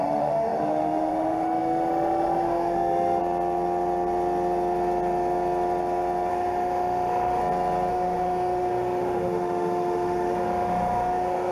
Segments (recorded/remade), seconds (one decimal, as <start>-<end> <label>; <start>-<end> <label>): 0.0-3.2 remade; 3.2-6.3 recorded; 6.3-7.4 remade; 7.4-7.9 recorded; 7.9-11.5 remade